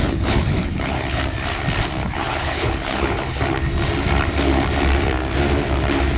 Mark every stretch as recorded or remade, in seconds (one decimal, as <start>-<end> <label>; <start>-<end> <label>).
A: 0.0-1.2 remade; 1.2-2.0 recorded; 2.0-3.4 remade; 3.4-6.2 recorded